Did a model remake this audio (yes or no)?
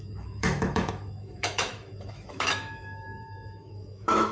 yes